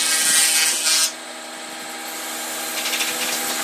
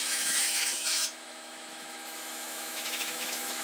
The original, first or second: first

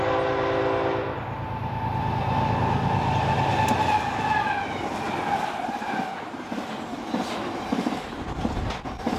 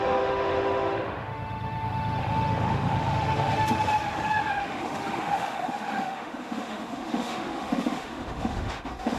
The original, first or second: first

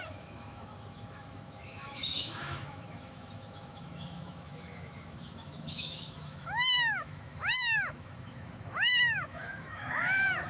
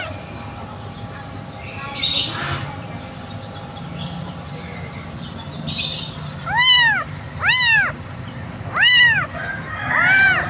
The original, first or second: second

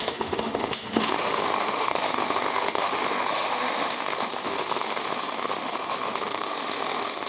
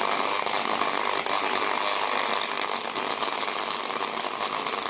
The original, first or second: second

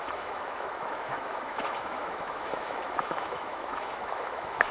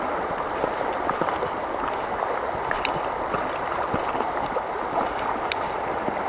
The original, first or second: second